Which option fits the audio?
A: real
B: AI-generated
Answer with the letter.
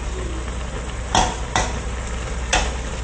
A